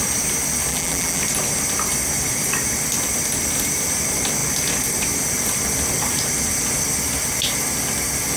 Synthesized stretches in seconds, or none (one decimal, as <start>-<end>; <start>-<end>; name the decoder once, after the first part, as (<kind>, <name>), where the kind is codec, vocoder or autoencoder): 0.7-1.2 (vocoder, BigVGAN v2)